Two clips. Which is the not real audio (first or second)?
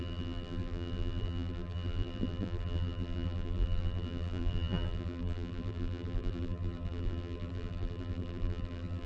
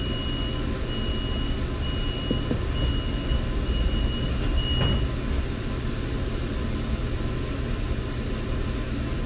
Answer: first